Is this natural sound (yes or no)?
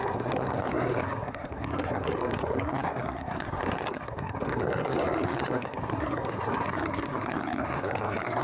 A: no